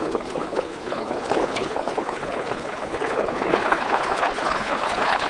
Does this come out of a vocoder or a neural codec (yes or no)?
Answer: yes